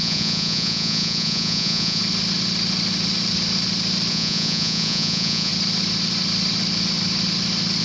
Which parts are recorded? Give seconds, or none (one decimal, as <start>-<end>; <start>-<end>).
2.0-4.1; 5.5-7.8